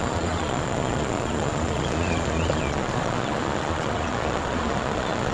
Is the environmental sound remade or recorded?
remade